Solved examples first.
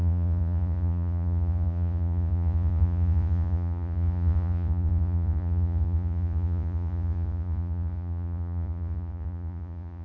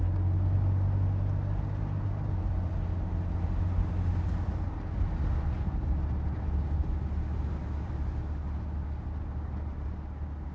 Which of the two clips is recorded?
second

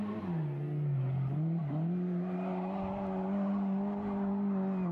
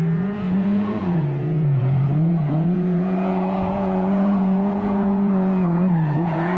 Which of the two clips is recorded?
first